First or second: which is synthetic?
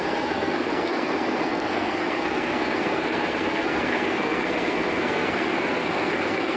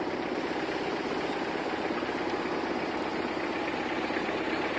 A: first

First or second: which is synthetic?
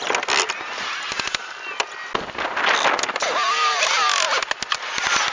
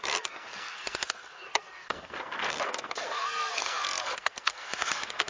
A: second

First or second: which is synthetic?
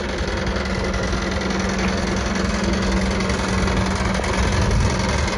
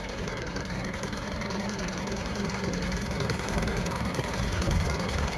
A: second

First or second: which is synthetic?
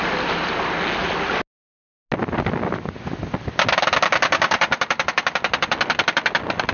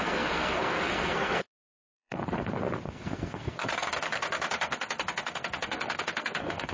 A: second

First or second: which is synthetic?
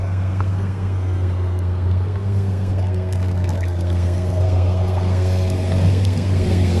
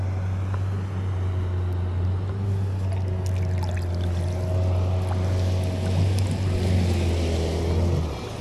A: first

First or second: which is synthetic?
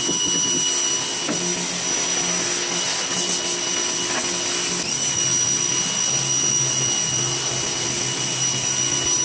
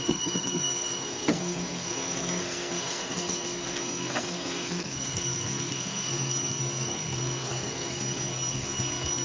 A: second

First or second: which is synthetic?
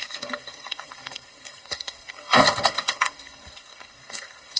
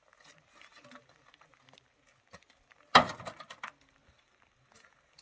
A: first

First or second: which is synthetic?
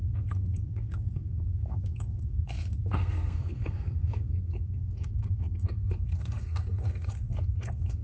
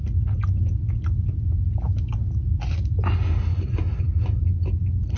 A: first